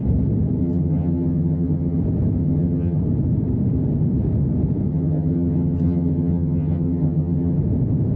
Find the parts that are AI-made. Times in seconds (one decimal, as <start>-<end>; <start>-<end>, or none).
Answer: 0.6-2.0; 2.4-3.0; 4.9-7.6